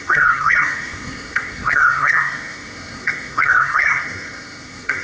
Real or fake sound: fake